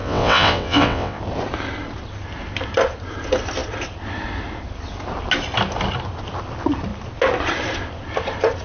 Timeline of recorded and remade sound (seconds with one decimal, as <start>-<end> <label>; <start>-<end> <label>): 0.0-1.2 remade; 1.2-8.6 recorded